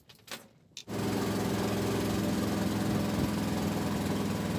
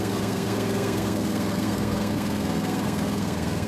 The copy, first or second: second